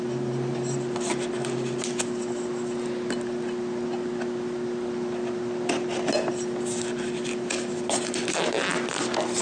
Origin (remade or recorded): recorded